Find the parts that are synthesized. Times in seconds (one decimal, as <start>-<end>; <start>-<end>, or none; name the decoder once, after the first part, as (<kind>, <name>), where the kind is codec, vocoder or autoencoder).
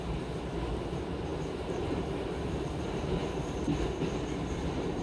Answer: none